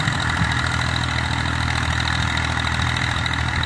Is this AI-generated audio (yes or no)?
no